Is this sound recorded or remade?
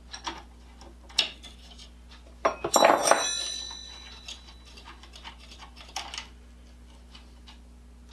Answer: recorded